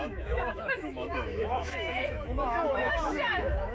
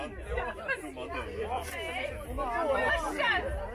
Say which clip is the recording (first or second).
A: second